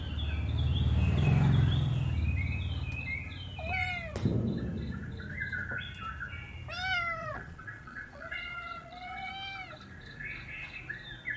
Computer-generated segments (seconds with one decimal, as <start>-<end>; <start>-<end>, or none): 7.2-9.3